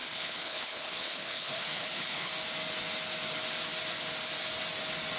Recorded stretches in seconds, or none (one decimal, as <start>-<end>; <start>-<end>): 2.3-5.2